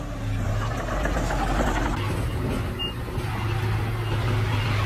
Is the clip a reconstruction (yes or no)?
no